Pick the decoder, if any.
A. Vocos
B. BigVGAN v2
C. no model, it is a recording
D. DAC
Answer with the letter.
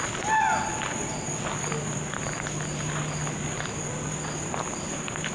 C